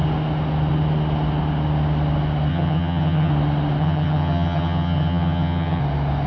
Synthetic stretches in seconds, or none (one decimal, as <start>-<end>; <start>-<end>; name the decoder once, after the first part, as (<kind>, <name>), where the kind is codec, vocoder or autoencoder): 2.5-3.3 (vocoder, HiFi-GAN); 3.8-5.8